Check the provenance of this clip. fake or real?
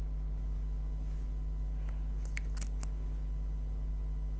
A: real